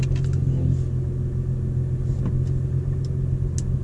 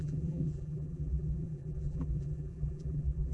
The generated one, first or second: second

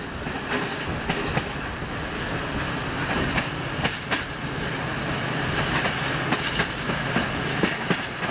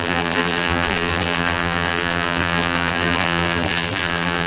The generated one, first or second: second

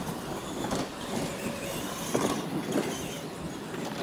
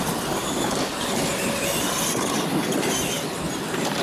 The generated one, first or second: first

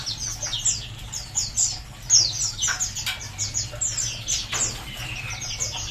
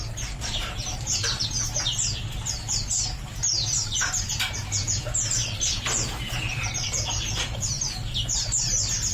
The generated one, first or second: second